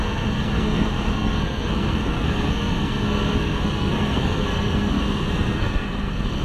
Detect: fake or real fake